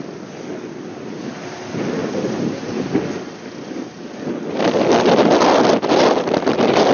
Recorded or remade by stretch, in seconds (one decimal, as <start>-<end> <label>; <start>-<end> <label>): 0.0-2.0 recorded; 2.0-2.7 remade; 2.7-6.9 recorded